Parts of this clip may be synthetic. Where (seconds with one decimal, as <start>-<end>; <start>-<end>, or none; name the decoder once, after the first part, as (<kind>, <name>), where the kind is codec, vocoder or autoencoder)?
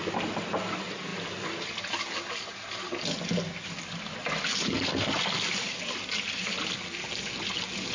none